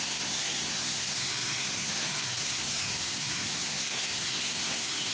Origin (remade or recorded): remade